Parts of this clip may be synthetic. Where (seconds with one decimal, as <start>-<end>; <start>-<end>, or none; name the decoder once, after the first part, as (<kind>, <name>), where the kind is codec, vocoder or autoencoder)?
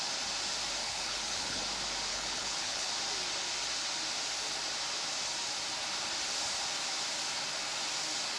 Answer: 0.8-1.6 (codec, HILCodec); 2.1-2.9